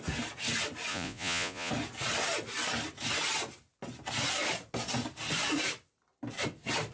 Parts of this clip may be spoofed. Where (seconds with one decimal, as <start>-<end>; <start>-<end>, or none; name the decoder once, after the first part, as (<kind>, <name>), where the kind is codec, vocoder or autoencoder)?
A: 0.9-1.7 (vocoder, Vocos)